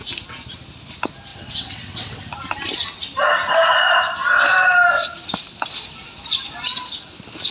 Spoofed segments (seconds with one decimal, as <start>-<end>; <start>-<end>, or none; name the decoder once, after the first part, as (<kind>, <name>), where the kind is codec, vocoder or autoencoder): 1.3-2.2 (vocoder, WaveNeXt)